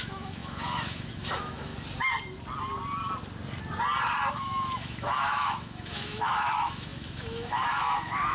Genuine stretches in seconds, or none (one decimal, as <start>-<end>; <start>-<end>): 1.7-4.3